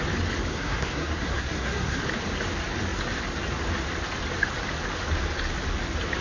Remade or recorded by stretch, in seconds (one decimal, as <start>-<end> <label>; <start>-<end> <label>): 0.0-0.5 recorded; 0.5-2.0 remade; 2.0-6.2 recorded